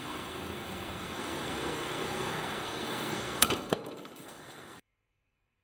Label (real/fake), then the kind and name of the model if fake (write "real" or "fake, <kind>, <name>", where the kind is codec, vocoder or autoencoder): fake, codec, SNAC